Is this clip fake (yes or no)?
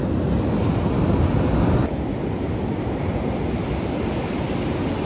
no